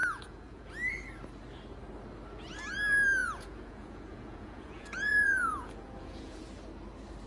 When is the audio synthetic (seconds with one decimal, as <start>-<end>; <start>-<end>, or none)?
0.0-0.7; 3.2-6.4